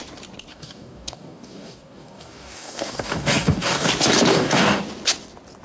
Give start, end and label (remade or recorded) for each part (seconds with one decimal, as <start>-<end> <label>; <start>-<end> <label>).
0.0-0.5 recorded; 0.5-3.9 remade; 3.9-4.3 recorded; 4.3-4.8 remade; 4.8-5.6 recorded